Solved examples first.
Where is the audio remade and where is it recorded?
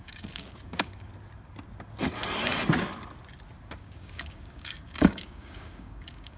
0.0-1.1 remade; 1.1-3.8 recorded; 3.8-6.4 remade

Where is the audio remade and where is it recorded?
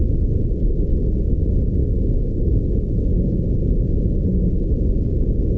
0.0-1.8 recorded; 1.8-2.6 remade; 2.6-5.6 recorded